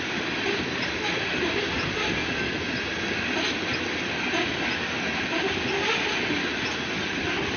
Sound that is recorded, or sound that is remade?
recorded